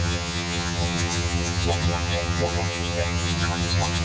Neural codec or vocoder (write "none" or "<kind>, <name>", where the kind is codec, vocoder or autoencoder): vocoder, HiFi-GAN